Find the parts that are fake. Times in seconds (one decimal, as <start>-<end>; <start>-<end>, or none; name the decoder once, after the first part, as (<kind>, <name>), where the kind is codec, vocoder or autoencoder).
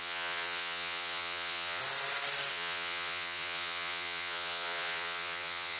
0.0-1.8 (vocoder, Vocos); 2.5-5.8